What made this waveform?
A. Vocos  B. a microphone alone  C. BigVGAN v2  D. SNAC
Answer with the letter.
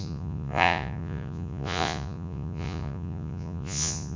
A